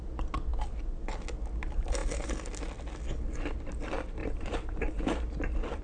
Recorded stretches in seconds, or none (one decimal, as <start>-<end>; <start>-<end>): 0.0-4.2